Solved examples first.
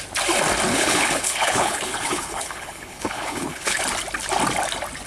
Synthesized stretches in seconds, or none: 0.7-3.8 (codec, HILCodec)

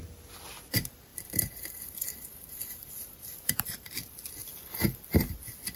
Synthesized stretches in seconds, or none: 1.1-4.3 (vocoder, BigVGAN v2)

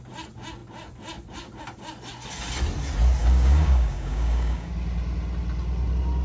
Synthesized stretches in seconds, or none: 3.2-4.7 (codec, DAC)

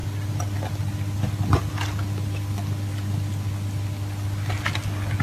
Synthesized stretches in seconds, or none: none

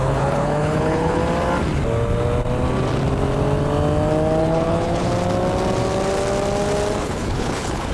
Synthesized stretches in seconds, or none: 0.0-1.2 (codec, HILCodec); 4.4-5.1; 7.0-7.9